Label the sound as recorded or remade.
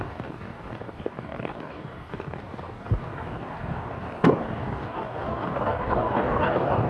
remade